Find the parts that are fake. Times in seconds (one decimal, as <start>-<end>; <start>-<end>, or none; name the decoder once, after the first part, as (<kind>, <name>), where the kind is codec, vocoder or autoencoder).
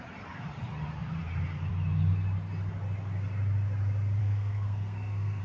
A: 4.2-5.4 (codec, SNAC)